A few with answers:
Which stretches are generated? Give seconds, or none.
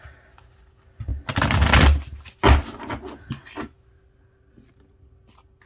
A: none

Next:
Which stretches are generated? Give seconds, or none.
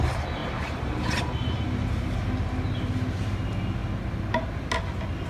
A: 0.4-1.2 (vocoder, BigVGAN v2)